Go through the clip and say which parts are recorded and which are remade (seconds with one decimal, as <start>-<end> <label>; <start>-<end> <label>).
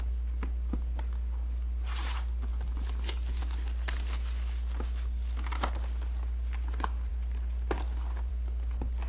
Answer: 0.0-9.1 recorded